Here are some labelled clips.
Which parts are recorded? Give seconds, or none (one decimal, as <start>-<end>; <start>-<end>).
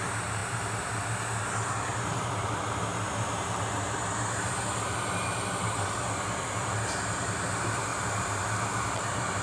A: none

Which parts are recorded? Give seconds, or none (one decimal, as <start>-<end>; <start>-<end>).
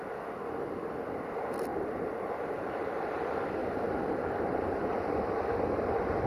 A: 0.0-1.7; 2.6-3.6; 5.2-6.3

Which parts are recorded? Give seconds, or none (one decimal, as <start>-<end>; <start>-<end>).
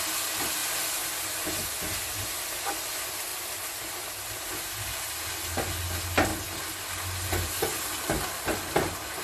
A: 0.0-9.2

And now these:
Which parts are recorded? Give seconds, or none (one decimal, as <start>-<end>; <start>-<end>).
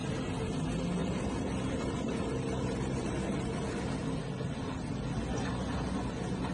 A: 0.0-1.0; 3.5-6.5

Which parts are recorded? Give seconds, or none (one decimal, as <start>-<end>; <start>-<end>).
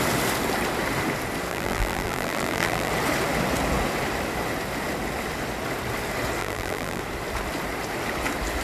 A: 0.0-1.5; 2.9-6.4; 7.0-8.6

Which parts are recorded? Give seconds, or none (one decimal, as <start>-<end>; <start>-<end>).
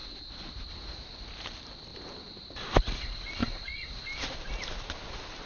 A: 1.0-1.9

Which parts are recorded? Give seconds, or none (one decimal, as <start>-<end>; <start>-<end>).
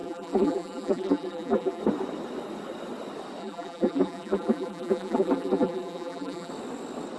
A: 1.8-3.4; 6.5-7.2